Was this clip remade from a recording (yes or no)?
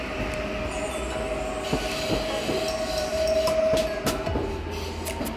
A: no